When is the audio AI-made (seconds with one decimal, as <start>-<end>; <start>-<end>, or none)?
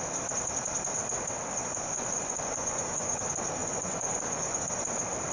1.6-3.2; 3.6-4.8